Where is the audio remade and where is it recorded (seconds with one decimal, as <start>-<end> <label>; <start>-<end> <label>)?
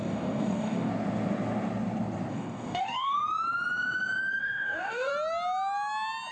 0.0-0.9 remade; 0.9-2.3 recorded; 2.3-3.2 remade; 3.2-4.4 recorded; 4.4-5.1 remade; 5.1-6.3 recorded